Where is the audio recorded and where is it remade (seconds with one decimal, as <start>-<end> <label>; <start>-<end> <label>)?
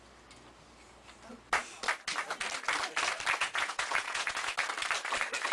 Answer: 0.0-3.4 recorded; 3.4-4.5 remade; 4.5-5.5 recorded